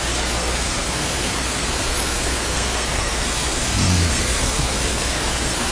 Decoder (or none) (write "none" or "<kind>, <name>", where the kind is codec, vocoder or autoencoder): codec, SNAC